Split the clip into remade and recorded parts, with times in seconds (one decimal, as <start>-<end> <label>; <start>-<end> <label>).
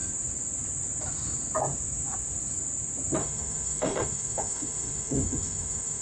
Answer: 0.0-3.2 recorded; 3.2-6.0 remade